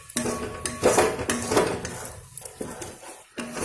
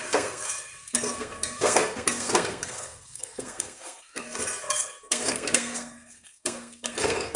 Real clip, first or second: first